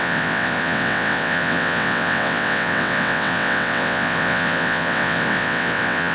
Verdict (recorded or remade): remade